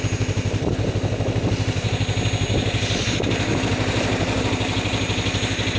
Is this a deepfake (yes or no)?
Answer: no